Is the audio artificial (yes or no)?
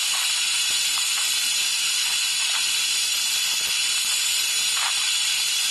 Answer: no